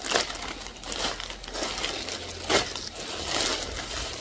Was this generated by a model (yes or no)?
no